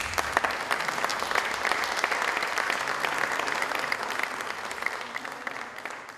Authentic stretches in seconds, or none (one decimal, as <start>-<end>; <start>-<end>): 0.0-1.1; 2.0-6.2